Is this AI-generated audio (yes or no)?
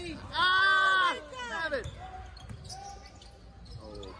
no